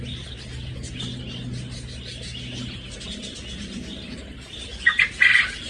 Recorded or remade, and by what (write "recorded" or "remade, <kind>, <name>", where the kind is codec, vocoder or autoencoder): recorded